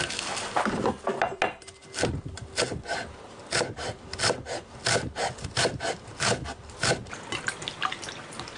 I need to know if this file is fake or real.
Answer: real